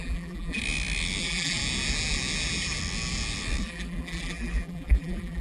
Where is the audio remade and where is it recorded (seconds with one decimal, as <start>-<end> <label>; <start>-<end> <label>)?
0.0-0.6 remade; 0.6-1.2 recorded; 1.2-1.6 remade; 1.6-3.6 recorded; 3.6-5.4 remade